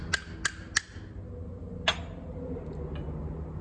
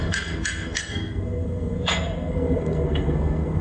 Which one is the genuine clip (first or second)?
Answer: first